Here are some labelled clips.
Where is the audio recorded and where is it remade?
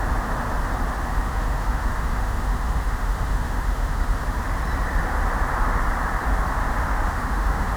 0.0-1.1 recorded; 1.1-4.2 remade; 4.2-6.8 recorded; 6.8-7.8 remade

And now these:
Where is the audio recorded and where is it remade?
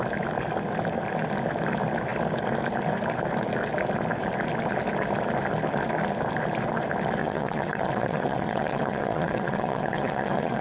0.0-7.2 recorded; 7.2-10.6 remade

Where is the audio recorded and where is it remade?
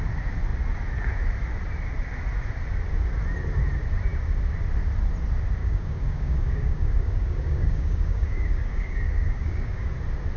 0.0-5.6 recorded; 5.6-9.9 remade; 9.9-10.4 recorded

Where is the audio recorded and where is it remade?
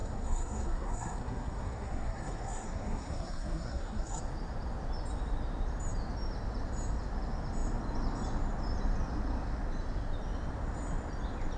0.0-4.2 remade; 4.2-11.6 recorded